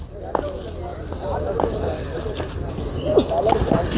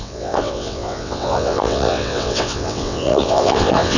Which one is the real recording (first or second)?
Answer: first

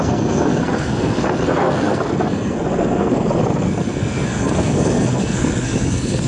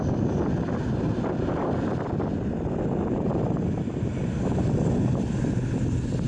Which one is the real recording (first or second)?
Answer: second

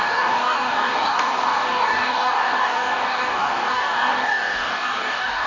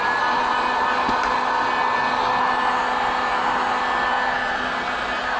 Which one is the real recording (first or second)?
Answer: second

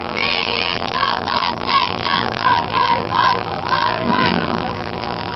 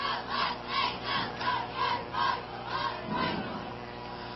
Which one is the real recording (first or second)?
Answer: second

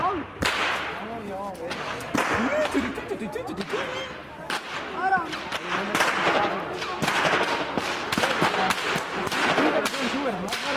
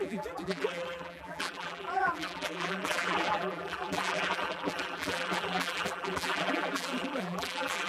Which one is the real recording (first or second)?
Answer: first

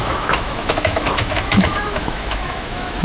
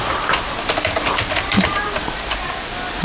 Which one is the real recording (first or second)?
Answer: second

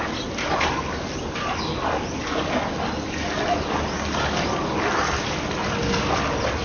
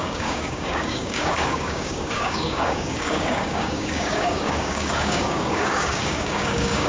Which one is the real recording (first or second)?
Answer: first